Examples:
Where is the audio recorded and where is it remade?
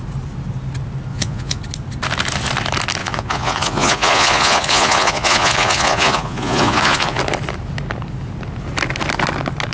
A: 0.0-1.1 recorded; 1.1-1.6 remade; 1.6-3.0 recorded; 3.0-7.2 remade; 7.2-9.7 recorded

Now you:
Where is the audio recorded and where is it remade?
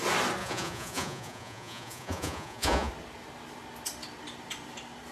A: 0.0-0.4 recorded; 0.4-2.9 remade; 2.9-5.1 recorded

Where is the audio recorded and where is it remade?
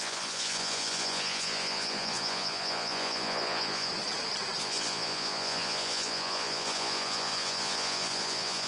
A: 0.0-3.9 remade; 3.9-4.6 recorded; 4.6-8.7 remade